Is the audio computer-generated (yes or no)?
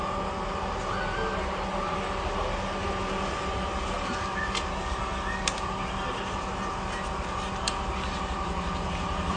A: no